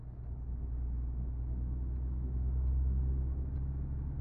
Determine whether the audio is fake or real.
real